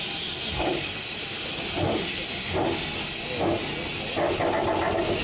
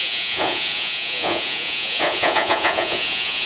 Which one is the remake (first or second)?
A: second